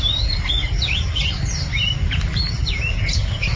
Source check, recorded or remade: recorded